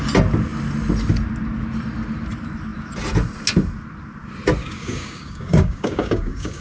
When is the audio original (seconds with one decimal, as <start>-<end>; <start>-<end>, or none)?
0.0-4.6